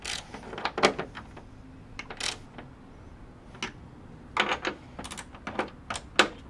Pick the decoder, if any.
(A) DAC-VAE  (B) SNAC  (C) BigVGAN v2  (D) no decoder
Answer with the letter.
D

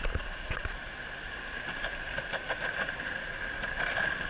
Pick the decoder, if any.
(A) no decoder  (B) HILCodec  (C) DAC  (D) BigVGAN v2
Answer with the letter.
D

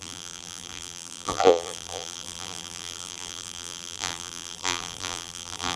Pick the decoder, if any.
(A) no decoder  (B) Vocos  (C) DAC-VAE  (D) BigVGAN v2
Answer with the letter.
D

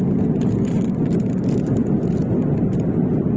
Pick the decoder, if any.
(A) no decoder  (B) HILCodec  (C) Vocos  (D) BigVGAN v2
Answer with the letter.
A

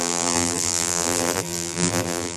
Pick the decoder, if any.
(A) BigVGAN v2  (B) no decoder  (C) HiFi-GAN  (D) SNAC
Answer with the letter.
A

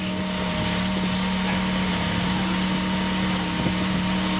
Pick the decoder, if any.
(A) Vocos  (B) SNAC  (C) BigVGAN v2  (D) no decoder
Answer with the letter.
D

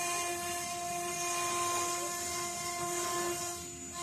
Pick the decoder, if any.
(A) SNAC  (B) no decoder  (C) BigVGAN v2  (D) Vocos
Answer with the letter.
B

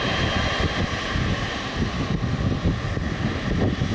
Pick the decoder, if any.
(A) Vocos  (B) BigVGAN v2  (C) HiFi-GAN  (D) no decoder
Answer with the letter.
D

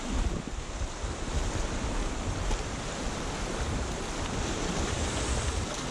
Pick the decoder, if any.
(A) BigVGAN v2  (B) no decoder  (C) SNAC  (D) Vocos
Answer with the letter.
B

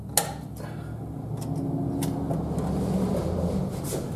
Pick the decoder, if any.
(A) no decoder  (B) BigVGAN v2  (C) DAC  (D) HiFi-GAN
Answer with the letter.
A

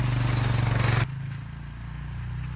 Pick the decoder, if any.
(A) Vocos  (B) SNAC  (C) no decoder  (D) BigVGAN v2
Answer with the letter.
C